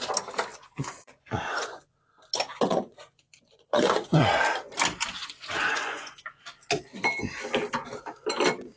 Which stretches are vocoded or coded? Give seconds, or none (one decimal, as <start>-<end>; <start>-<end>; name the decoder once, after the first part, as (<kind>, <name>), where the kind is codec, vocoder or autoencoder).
0.5-2.2 (vocoder, Vocos); 2.7-4.3; 5.2-6.4